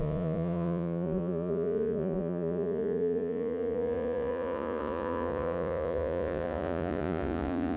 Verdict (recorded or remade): remade